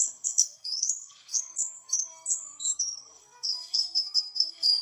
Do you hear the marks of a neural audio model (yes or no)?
yes